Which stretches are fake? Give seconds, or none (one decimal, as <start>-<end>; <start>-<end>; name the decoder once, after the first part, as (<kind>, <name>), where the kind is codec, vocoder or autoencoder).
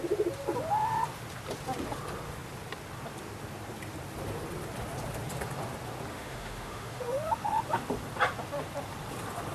6.1-7.6 (autoencoder, DAC-VAE)